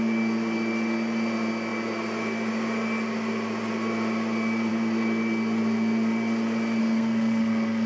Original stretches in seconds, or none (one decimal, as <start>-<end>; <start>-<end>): 0.0-6.8